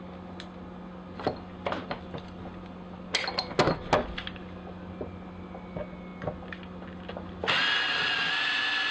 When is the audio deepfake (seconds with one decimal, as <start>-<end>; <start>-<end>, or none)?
none